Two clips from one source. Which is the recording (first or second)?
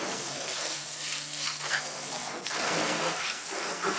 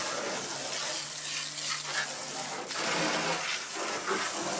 second